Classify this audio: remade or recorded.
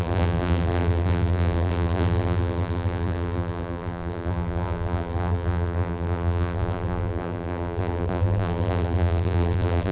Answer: remade